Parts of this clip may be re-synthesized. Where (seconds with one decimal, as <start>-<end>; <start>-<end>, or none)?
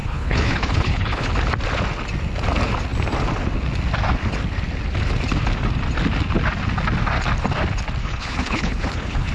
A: 0.0-1.3; 8.0-9.3